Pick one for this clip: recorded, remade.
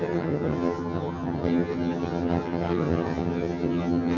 remade